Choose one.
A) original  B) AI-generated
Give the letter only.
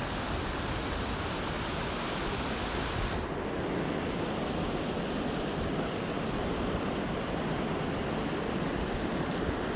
A